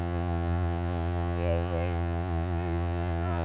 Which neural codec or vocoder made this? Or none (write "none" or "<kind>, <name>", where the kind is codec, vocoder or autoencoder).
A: vocoder, Vocos